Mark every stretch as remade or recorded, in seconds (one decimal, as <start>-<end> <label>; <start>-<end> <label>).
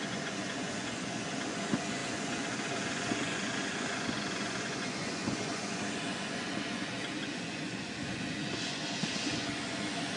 0.0-10.2 remade